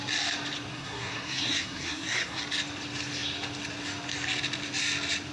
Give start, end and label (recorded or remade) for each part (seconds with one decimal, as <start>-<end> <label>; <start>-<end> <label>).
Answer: 0.0-0.7 recorded; 0.7-2.4 remade; 2.4-5.3 recorded